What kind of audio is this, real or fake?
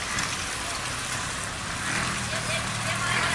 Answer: real